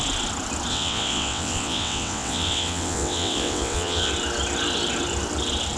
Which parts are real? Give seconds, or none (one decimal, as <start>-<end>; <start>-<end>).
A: 0.0-0.7; 4.1-5.8

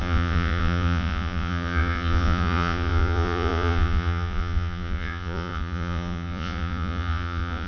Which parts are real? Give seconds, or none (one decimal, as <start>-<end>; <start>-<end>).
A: none